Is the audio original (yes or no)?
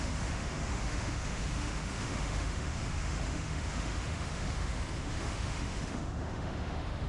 no